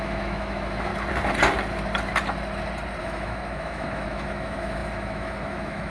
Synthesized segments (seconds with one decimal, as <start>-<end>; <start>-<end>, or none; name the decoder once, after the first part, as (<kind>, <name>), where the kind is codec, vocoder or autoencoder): 0.0-0.9 (autoencoder, DAC-VAE); 3.0-5.9